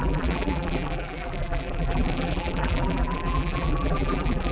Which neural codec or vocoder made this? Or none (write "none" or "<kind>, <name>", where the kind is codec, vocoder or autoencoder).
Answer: vocoder, BigVGAN v2